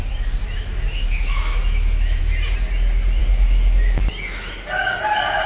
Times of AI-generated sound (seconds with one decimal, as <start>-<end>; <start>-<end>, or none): 0.4-2.2; 3.2-4.0